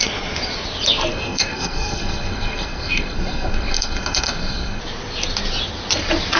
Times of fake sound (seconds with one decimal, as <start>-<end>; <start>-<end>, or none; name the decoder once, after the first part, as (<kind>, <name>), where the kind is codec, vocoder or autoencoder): 1.1-4.8 (codec, SNAC)